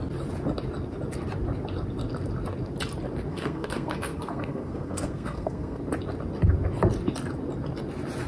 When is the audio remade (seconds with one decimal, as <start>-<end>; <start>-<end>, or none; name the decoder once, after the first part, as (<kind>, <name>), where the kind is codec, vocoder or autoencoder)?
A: 3.3-5.8 (codec, SNAC)

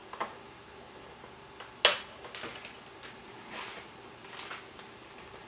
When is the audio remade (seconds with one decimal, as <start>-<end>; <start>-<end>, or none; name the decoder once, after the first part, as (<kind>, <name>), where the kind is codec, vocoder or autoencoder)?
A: none

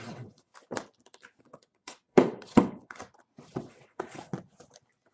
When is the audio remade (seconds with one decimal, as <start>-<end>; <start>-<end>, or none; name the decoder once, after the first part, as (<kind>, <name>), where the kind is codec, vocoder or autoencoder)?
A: 0.0-0.5 (vocoder, WaveNeXt); 1.4-3.0; 3.5-4.3

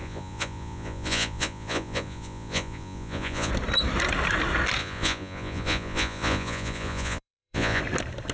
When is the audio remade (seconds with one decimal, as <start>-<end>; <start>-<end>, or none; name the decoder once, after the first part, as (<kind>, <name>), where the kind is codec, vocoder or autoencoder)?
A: 0.0-3.5 (vocoder, Vocos); 4.8-7.8

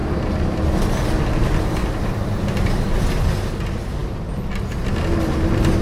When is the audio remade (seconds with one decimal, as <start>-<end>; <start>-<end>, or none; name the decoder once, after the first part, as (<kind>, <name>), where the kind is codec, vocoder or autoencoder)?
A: none

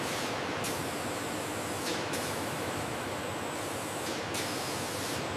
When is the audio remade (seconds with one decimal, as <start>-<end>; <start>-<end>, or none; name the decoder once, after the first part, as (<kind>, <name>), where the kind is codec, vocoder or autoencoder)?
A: 1.9-3.2 (autoencoder, DAC-VAE)

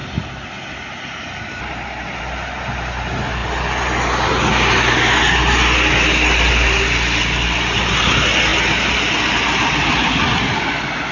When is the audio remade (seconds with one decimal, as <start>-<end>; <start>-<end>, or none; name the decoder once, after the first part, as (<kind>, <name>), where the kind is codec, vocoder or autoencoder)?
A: none

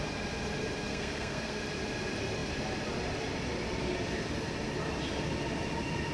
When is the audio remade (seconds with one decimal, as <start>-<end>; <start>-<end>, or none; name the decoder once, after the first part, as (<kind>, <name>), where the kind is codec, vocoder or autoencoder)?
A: 0.9-1.6 (codec, SNAC)